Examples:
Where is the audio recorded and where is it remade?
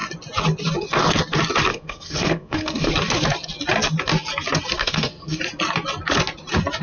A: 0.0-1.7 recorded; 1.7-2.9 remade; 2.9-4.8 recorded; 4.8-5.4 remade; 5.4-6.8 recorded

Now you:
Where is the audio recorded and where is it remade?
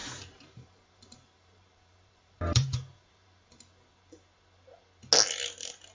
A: 0.0-3.5 remade; 3.5-5.9 recorded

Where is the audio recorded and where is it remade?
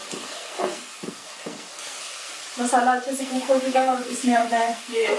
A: 0.0-2.4 remade; 2.4-3.2 recorded; 3.2-5.2 remade